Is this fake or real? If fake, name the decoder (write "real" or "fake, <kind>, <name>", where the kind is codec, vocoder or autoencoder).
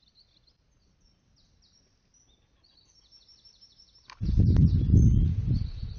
real